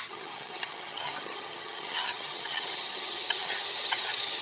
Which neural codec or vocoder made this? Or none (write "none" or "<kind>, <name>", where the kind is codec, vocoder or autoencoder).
vocoder, HiFi-GAN